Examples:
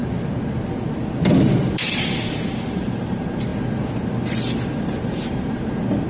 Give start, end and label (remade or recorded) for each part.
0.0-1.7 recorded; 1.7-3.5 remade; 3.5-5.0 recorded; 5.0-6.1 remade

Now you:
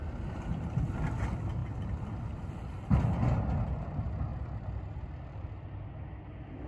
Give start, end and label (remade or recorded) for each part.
0.0-0.5 recorded; 0.5-1.2 remade; 1.2-6.7 recorded

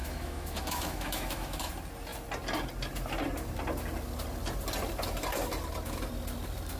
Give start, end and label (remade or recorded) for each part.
0.0-1.7 remade; 1.7-6.8 recorded